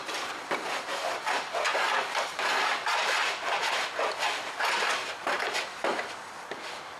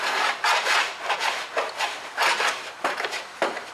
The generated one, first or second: first